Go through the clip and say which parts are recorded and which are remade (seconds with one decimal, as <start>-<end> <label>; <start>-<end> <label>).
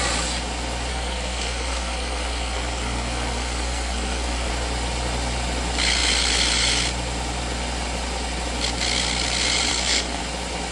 0.0-0.9 recorded; 0.9-4.5 remade; 4.5-9.7 recorded; 9.7-10.2 remade; 10.2-10.7 recorded